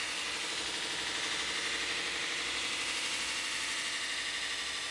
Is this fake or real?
real